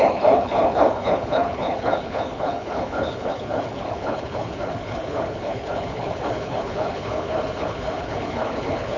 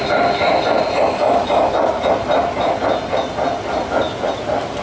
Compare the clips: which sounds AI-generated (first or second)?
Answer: first